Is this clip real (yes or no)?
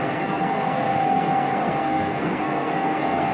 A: no